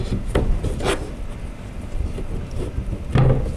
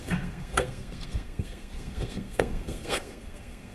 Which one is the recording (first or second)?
first